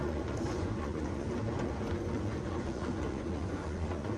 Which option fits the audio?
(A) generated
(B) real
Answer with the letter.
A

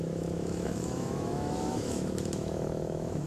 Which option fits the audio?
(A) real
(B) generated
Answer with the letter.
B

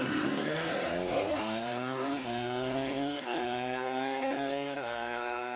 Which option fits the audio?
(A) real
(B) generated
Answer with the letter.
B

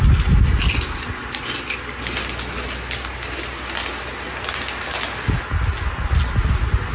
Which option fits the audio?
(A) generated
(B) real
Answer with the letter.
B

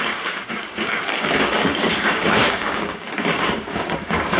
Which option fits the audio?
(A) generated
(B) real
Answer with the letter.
A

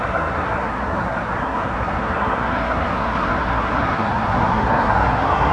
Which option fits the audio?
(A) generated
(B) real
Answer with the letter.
A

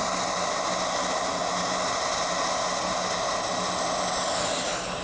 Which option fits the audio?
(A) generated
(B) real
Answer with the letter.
B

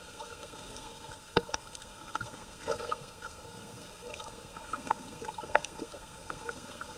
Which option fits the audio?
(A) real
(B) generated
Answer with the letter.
B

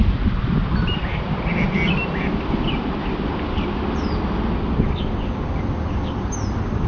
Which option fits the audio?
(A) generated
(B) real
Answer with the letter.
B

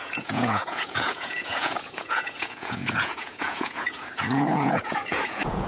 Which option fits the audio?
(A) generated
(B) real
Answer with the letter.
A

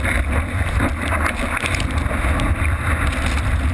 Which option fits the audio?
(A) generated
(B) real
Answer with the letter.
B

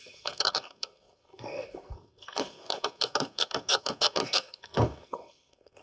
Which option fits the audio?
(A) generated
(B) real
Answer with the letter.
A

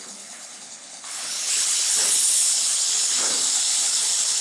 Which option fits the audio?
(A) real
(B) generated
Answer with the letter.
B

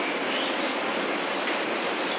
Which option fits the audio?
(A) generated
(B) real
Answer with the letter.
B